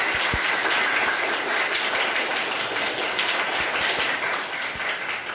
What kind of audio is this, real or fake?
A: real